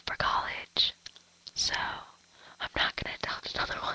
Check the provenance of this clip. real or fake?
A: real